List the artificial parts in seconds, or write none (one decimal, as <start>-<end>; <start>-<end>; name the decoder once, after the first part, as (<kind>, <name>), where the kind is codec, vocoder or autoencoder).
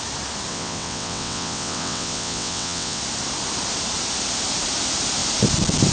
0.5-3.0 (vocoder, WaveNeXt)